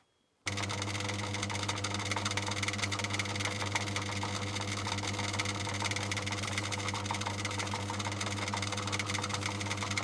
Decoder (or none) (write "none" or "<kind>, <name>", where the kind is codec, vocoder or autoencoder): none